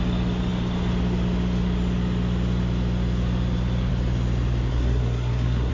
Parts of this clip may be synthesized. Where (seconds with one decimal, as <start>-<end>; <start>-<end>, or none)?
4.7-5.7